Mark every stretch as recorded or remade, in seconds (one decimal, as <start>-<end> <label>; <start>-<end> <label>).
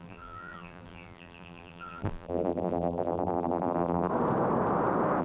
0.0-4.1 remade; 4.1-5.2 recorded